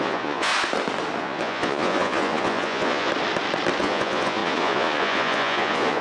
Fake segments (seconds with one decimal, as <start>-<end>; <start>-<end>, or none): 0.0-0.5; 1.2-3.1; 3.8-6.0